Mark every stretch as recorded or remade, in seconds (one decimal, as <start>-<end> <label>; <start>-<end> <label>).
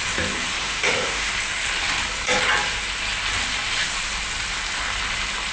0.0-0.6 recorded; 0.6-1.3 remade; 1.3-5.5 recorded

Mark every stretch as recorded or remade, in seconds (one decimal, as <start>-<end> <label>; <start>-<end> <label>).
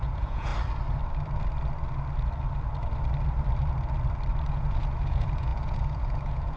0.0-0.5 remade; 0.5-4.5 recorded; 4.5-6.6 remade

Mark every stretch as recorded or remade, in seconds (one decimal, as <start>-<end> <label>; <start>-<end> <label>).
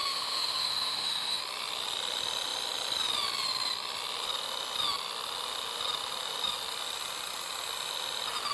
0.0-1.4 remade; 1.4-8.5 recorded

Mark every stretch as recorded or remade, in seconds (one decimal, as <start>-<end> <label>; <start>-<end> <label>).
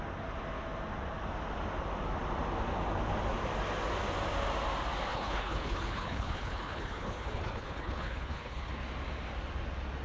0.0-5.1 recorded; 5.1-8.7 remade; 8.7-10.0 recorded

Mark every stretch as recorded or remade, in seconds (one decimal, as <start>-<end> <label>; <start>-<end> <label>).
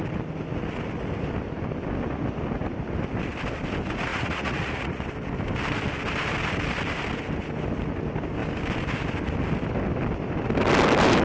0.0-4.1 recorded; 4.1-5.0 remade; 5.0-11.2 recorded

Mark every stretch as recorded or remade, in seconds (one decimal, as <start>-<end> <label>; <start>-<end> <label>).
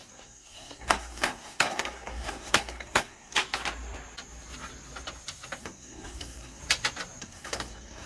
0.0-3.4 remade; 3.4-5.6 recorded; 5.6-6.6 remade; 6.6-7.2 recorded; 7.2-8.1 remade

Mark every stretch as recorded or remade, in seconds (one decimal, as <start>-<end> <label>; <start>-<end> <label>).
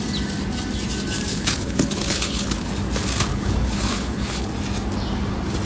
0.0-1.3 recorded; 1.3-2.7 remade; 2.7-3.3 recorded; 3.3-4.5 remade; 4.5-5.7 recorded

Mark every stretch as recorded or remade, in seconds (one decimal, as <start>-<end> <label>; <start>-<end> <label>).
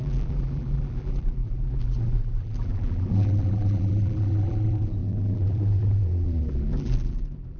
0.0-7.6 remade